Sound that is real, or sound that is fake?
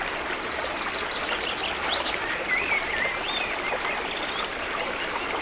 real